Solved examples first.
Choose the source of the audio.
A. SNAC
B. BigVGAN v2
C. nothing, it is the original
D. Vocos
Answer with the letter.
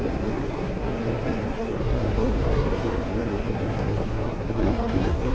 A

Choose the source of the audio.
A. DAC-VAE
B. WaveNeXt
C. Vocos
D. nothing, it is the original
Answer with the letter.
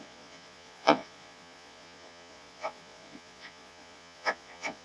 C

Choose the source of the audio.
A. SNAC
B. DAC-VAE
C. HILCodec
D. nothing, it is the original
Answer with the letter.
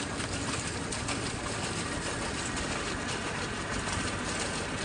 D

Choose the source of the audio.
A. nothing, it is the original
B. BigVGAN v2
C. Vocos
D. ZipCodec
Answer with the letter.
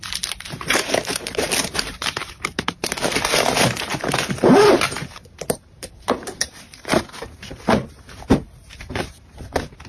B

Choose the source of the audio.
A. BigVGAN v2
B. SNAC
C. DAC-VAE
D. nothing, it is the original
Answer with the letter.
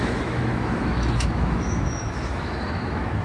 C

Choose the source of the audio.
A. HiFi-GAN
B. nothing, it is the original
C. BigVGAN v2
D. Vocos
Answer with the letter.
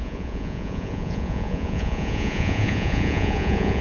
D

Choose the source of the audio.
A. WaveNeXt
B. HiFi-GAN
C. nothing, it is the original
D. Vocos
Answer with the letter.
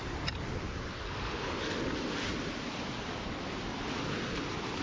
C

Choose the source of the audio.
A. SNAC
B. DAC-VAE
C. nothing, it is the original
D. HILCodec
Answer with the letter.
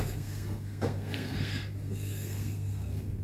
A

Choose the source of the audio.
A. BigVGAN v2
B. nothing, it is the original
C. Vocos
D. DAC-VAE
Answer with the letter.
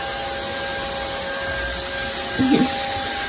B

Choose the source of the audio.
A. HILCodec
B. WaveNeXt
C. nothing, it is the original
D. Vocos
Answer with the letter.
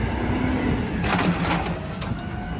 C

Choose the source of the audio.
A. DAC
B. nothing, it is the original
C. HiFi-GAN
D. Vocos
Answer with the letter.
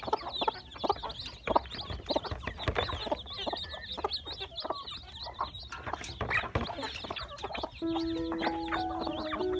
B